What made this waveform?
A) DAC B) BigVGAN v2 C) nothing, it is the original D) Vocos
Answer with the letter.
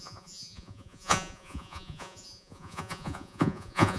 D